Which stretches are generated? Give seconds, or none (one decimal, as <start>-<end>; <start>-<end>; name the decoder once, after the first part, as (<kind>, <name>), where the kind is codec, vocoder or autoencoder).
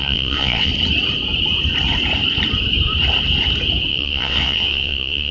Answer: 0.0-0.7 (vocoder, WaveNeXt); 3.9-5.3